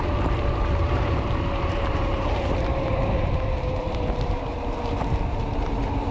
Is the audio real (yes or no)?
no